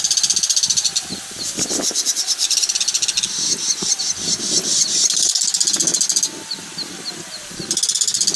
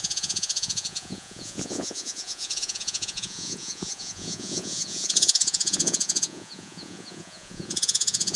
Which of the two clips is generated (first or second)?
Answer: second